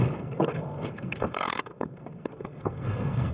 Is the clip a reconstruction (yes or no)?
yes